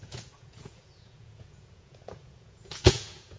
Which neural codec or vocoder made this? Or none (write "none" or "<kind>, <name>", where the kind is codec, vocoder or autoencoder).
vocoder, Vocos